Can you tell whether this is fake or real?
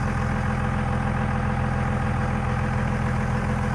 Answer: real